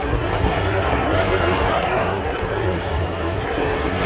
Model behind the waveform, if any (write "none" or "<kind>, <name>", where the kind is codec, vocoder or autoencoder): codec, SNAC